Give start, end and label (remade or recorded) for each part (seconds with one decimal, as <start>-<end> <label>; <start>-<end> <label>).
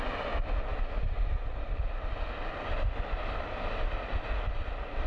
0.0-5.1 recorded